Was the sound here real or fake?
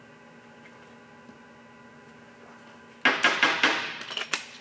real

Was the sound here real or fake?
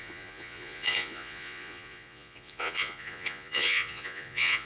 fake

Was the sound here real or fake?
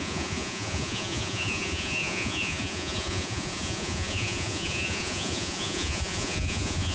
fake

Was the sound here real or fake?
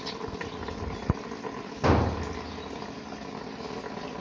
real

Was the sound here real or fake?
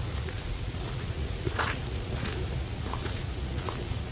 fake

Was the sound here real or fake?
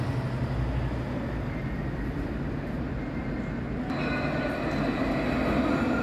real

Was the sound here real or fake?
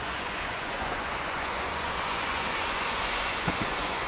fake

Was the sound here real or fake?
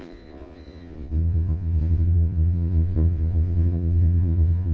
fake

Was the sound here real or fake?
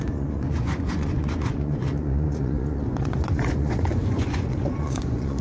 fake